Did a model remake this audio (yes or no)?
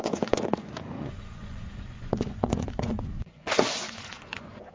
yes